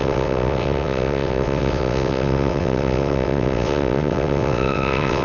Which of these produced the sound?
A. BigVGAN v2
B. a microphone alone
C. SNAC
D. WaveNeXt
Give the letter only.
D